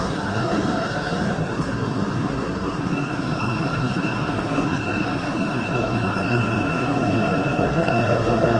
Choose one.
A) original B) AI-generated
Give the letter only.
B